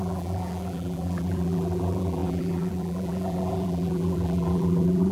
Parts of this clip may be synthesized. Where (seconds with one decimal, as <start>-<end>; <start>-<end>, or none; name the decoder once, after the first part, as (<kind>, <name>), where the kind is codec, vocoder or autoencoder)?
0.0-5.1 (vocoder, BigVGAN v2)